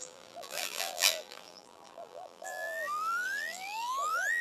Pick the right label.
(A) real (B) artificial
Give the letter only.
B